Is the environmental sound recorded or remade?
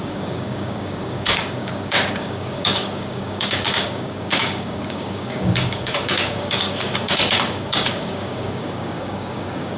remade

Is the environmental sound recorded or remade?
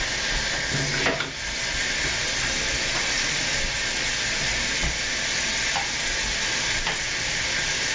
recorded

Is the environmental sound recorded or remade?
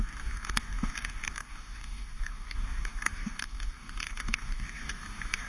remade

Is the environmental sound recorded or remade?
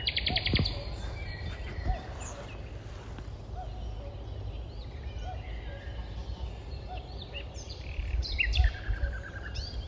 recorded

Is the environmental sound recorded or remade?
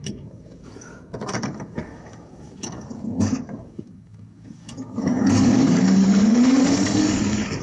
remade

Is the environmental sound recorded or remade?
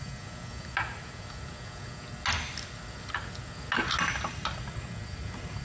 recorded